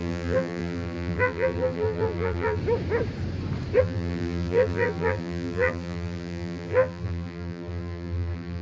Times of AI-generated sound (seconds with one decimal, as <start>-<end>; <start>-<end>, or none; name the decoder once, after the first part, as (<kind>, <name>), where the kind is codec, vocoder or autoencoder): 0.0-2.6 (vocoder, BigVGAN v2); 3.8-8.6